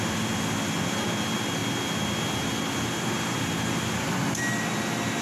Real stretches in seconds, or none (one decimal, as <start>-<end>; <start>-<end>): 0.0-5.2